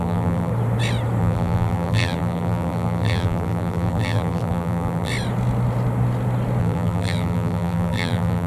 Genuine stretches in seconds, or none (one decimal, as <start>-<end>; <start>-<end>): 0.5-1.2; 5.1-6.6